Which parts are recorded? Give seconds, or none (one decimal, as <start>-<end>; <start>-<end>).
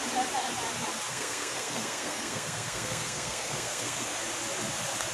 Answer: 0.0-1.1; 4.2-5.1